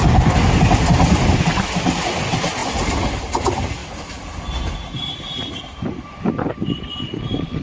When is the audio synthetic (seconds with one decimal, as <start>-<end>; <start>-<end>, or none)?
0.0-0.7; 2.6-3.2; 3.8-5.6; 6.5-7.6